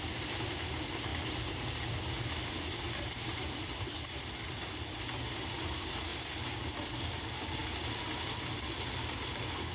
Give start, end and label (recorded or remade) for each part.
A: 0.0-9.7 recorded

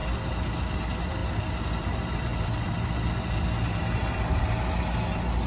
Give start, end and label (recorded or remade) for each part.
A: 0.0-1.2 recorded; 1.2-4.5 remade; 4.5-5.5 recorded

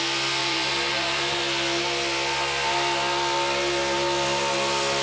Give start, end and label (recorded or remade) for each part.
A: 0.0-0.4 recorded; 0.4-1.4 remade; 1.4-5.0 recorded

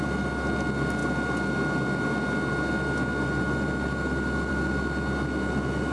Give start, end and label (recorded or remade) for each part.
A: 0.0-5.9 recorded

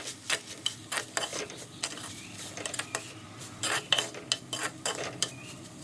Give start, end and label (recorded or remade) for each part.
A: 0.0-1.3 recorded; 1.3-4.0 remade; 4.0-4.6 recorded; 4.6-5.8 remade

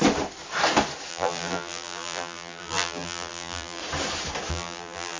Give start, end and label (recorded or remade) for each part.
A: 0.0-1.1 recorded; 1.1-3.8 remade; 3.8-4.5 recorded; 4.5-5.2 remade

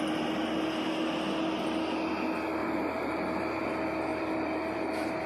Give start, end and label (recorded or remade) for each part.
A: 0.0-2.6 recorded; 2.6-3.6 remade; 3.6-4.1 recorded; 4.1-5.3 remade